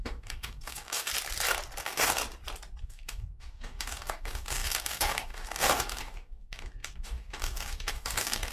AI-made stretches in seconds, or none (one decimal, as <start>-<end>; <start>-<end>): 0.0-1.1; 1.8-2.2; 2.8-8.5